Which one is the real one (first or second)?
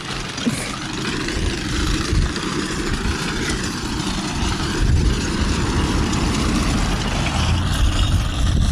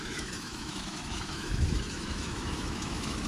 first